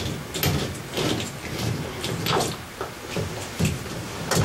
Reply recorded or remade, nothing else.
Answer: recorded